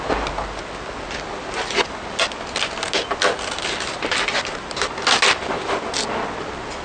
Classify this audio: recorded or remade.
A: recorded